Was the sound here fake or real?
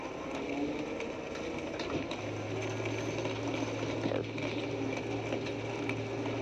real